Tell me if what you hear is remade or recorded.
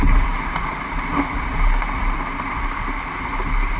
remade